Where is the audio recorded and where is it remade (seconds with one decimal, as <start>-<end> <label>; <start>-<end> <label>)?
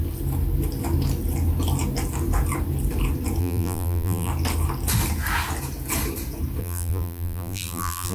0.0-3.4 recorded; 3.4-4.3 remade; 4.3-6.6 recorded; 6.6-8.1 remade